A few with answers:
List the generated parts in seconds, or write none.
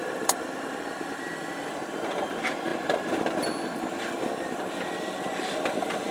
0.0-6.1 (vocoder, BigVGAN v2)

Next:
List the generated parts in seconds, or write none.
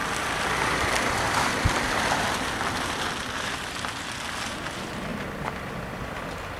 0.0-4.0 (vocoder, BigVGAN v2); 5.1-5.7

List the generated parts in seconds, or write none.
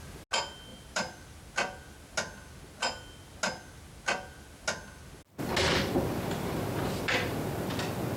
0.7-1.4 (vocoder, BigVGAN v2)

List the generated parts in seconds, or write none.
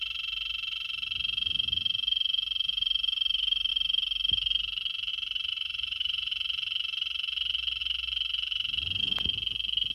5.5-6.3 (vocoder, BigVGAN v2)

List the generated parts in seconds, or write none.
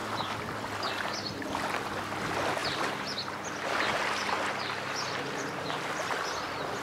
none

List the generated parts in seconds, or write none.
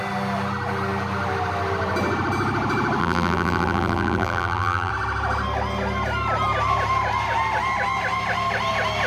3.0-4.9 (vocoder, BigVGAN v2)